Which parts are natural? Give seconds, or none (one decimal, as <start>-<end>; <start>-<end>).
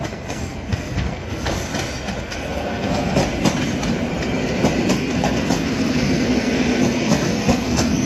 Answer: 1.7-2.2; 3.2-4.9